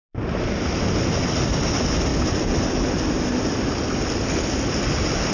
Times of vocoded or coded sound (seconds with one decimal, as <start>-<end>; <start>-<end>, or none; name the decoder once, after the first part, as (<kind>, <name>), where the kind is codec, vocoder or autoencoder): none